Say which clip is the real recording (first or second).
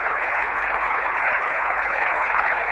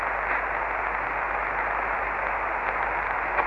second